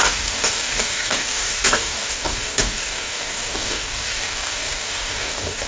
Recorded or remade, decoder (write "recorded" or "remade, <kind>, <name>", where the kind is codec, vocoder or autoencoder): remade, codec, DAC